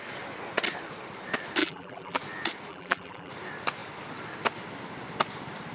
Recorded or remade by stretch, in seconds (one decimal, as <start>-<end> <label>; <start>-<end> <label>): 0.0-1.6 recorded; 1.6-2.2 remade; 2.2-2.7 recorded; 2.7-3.3 remade; 3.3-5.7 recorded